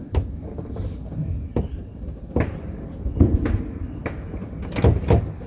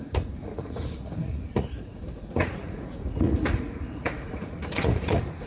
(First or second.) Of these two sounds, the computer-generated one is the second